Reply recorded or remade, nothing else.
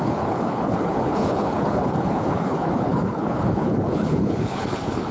remade